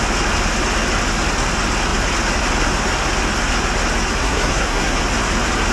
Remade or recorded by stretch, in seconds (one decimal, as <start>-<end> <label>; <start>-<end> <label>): 0.0-4.2 recorded; 4.2-5.0 remade; 5.0-5.7 recorded

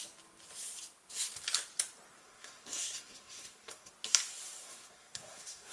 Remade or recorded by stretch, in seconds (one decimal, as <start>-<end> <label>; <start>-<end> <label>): 0.0-2.2 recorded; 2.2-3.9 remade; 3.9-4.6 recorded; 4.6-5.7 remade

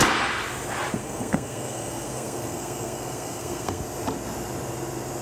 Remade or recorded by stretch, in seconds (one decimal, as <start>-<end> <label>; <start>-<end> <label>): 0.0-1.0 recorded; 1.0-3.8 remade; 3.8-5.2 recorded

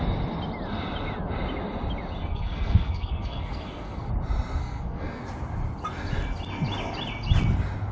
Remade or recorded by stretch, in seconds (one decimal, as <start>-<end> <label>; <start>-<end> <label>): 0.0-2.3 recorded; 2.3-4.1 remade; 4.1-4.6 recorded; 4.6-5.2 remade; 5.2-7.9 recorded

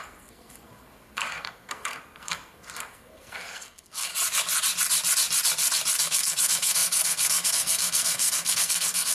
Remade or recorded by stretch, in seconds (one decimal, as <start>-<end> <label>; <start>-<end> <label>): 0.0-4.1 remade; 4.1-6.0 recorded; 6.0-9.1 remade

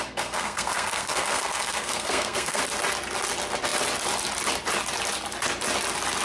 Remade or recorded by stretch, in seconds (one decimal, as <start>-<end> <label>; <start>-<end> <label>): 0.0-2.6 remade; 2.6-6.2 recorded

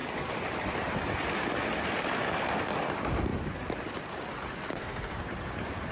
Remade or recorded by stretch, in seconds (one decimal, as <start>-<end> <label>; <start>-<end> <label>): 0.0-4.7 recorded; 4.7-5.3 remade; 5.3-5.9 recorded

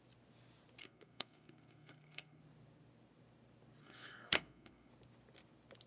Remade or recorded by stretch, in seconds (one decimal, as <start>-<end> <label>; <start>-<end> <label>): 0.0-0.8 recorded; 0.8-2.4 remade; 2.4-3.8 recorded; 3.8-4.9 remade; 4.9-5.9 recorded